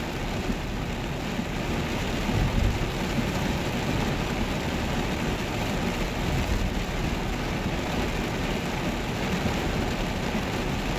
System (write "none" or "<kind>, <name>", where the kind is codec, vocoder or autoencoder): none